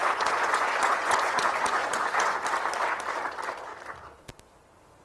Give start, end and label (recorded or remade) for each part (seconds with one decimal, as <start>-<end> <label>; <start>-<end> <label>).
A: 0.0-2.4 remade; 2.4-5.0 recorded